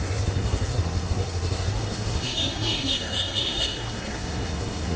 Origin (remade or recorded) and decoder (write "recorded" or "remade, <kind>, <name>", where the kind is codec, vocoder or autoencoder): remade, codec, SNAC